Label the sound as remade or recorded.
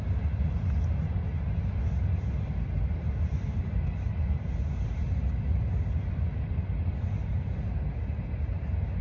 recorded